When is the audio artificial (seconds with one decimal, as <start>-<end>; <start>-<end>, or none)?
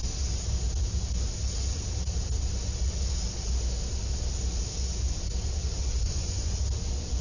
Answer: 6.0-6.6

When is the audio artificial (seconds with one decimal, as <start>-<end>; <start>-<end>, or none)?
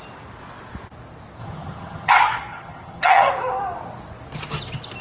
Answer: 1.4-2.1; 2.5-3.3